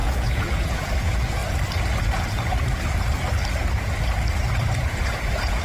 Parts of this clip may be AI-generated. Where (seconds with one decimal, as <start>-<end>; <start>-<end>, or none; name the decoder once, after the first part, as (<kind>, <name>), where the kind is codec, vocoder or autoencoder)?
0.0-1.4 (vocoder, Vocos); 4.8-5.6